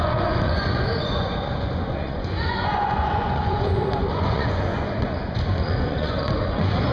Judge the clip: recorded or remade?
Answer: remade